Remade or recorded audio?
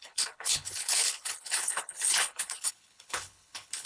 remade